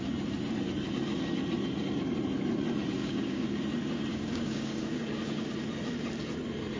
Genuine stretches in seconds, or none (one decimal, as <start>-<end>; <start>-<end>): 0.0-3.0; 3.6-4.1; 5.5-6.8